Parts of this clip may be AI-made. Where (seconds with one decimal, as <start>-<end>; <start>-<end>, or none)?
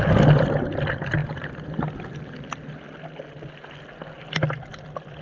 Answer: none